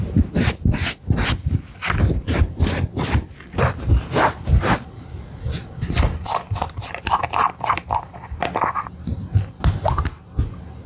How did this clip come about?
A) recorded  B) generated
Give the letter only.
A